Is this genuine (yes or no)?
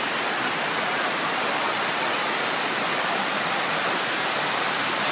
yes